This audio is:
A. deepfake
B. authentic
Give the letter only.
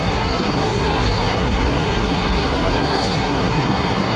A